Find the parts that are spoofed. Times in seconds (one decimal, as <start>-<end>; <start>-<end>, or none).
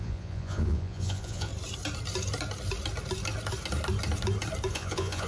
0.0-1.5; 4.7-5.3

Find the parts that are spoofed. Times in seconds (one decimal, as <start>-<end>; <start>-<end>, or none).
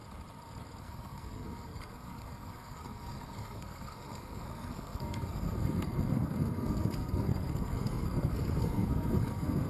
0.8-9.7